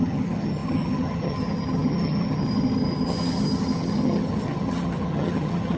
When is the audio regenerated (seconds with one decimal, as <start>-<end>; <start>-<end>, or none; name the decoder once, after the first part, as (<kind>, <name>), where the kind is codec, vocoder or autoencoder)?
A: 0.0-5.8 (vocoder, HiFi-GAN)